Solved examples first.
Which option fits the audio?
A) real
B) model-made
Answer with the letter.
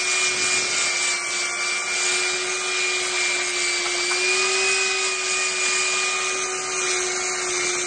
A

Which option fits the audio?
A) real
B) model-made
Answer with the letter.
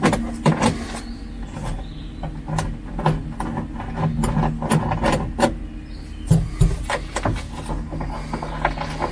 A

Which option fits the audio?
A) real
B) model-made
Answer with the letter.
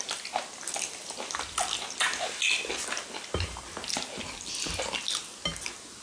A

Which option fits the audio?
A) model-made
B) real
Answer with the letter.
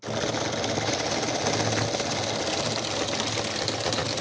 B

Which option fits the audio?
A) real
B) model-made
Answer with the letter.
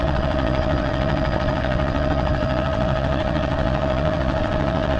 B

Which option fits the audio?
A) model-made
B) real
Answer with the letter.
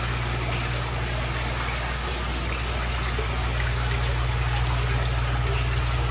B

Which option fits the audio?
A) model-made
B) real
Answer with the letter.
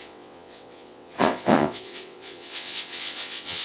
A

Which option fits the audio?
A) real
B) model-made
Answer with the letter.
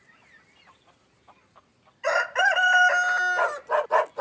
A